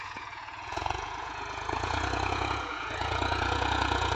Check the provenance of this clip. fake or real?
fake